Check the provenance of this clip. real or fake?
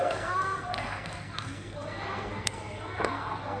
fake